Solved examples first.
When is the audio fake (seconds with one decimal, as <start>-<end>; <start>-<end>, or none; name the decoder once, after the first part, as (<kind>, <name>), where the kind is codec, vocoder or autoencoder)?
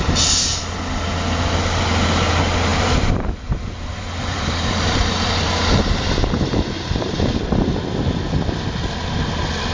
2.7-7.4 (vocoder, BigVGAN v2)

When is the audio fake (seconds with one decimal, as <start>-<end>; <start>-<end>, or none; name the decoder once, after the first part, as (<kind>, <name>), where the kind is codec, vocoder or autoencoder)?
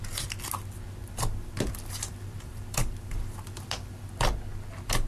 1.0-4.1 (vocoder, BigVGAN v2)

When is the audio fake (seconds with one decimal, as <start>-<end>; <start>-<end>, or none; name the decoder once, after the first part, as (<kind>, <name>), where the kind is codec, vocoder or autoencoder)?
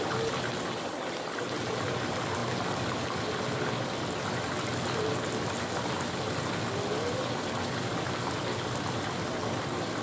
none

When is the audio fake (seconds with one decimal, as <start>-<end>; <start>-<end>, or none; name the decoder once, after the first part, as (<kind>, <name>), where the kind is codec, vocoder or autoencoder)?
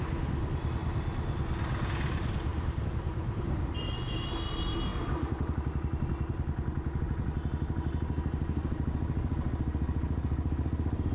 2.5-4.3 (vocoder, BigVGAN v2)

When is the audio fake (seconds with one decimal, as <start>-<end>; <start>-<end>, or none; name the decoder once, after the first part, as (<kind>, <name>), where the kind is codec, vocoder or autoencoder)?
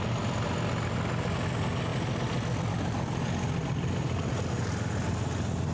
none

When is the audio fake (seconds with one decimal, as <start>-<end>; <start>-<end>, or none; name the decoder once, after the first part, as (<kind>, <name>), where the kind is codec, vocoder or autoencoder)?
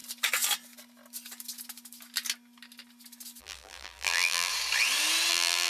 3.4-4.5 (vocoder, BigVGAN v2); 5.3-5.7